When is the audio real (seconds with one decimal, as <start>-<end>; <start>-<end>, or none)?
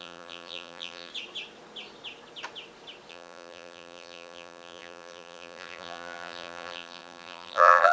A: 1.1-3.1